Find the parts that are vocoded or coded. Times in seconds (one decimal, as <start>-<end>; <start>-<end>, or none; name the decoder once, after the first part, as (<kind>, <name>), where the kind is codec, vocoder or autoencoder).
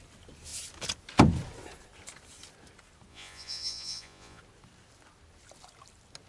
3.1-4.4 (vocoder, Vocos)